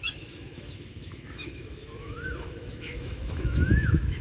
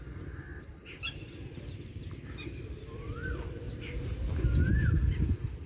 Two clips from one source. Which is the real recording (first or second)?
second